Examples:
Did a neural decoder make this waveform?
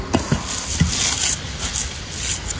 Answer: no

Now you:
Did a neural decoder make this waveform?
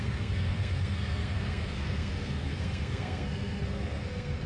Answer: yes